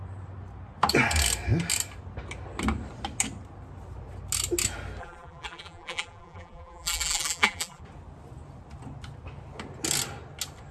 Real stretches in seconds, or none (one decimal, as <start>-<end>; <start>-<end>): 0.0-5.0; 7.8-10.7